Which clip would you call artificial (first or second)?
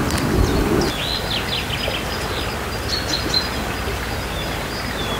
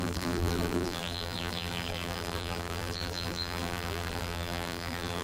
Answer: second